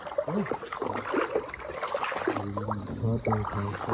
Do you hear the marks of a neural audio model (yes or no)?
no